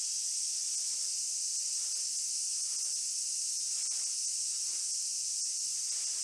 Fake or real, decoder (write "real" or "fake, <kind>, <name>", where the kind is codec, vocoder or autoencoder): real